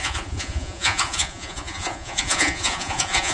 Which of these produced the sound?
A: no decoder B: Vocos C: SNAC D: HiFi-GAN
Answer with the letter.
B